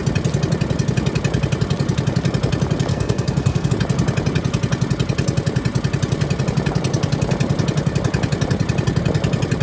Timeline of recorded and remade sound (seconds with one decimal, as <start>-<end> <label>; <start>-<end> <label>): 0.0-2.9 recorded; 2.9-3.7 remade; 3.7-9.6 recorded